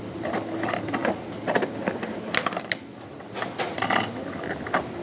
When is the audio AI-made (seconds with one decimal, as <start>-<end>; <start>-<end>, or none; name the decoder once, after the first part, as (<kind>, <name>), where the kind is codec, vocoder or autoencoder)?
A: none